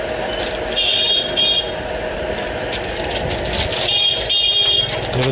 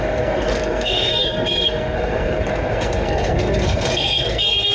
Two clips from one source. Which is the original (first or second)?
first